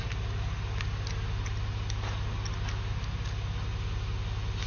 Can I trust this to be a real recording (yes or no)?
yes